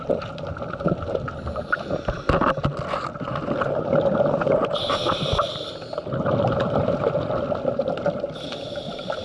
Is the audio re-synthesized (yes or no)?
no